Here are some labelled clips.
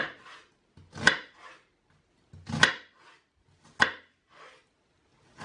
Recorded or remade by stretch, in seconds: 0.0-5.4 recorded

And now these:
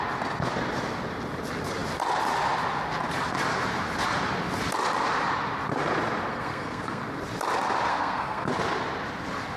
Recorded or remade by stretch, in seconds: 0.0-6.3 recorded; 6.3-7.0 remade; 7.0-7.9 recorded; 7.9-8.5 remade; 8.5-9.6 recorded

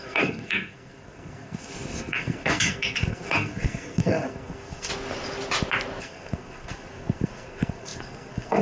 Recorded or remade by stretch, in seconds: 0.0-4.9 remade; 4.9-6.0 recorded; 6.0-8.6 remade